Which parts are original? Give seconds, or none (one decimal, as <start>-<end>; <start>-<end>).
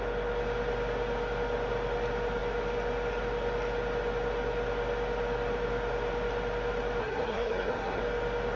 0.0-7.0; 8.0-8.6